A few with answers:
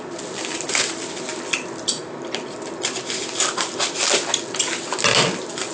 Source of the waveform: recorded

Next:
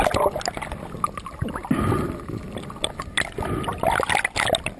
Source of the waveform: recorded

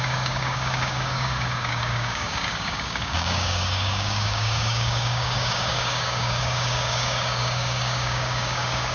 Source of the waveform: remade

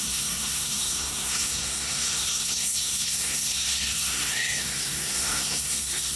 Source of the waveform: remade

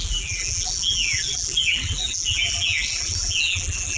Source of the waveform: remade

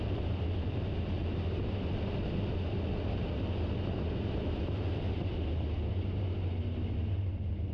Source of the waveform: recorded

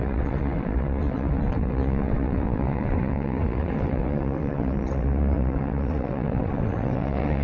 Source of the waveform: remade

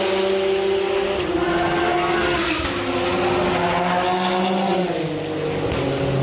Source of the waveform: recorded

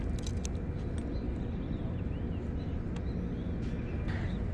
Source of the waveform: recorded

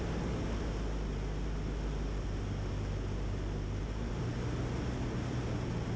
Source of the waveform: recorded